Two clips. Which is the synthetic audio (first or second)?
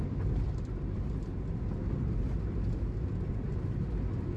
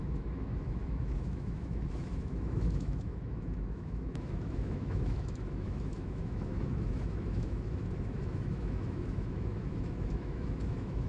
second